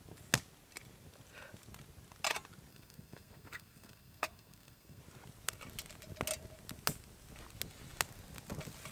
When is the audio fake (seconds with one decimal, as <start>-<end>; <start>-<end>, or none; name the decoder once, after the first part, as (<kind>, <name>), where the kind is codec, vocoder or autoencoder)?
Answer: 2.7-5.0 (codec, SNAC)